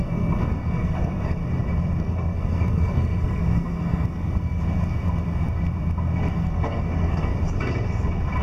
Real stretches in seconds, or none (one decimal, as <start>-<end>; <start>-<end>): 1.4-2.0; 4.6-6.3; 7.3-8.4